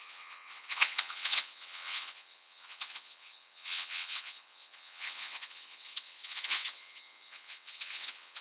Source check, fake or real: fake